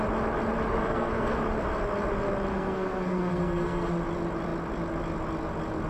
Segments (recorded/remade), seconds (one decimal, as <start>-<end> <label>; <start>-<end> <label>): 0.0-0.8 recorded; 0.8-1.4 remade; 1.4-2.5 recorded; 2.5-3.9 remade; 3.9-5.9 recorded